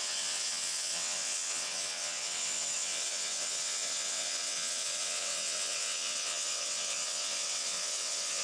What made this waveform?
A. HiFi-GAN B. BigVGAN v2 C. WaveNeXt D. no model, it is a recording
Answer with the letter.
C